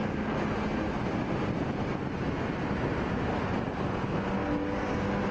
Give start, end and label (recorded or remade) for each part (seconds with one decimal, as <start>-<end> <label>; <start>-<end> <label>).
0.0-5.3 recorded